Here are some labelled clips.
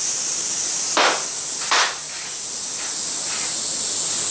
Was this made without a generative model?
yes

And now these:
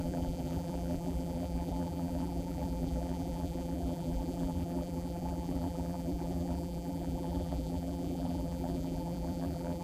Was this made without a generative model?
no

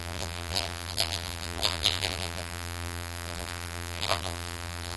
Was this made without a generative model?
no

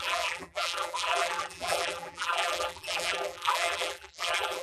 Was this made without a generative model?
no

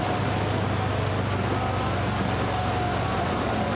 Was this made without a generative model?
yes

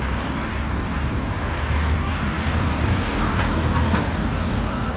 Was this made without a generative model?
no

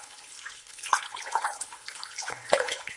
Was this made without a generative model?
no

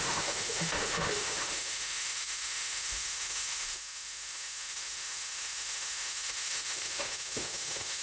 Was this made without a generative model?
no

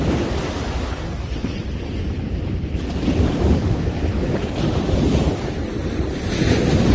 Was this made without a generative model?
no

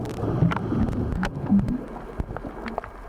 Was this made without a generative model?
yes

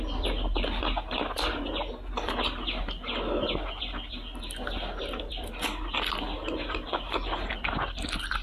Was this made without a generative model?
yes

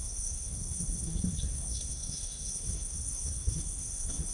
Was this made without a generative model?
no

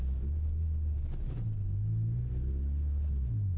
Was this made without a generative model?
yes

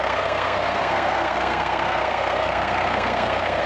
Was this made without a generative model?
no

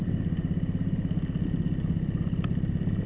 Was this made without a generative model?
yes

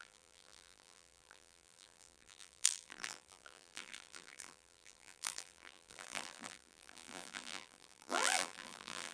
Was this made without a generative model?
no